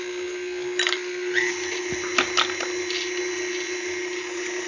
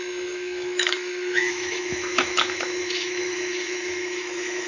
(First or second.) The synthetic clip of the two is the second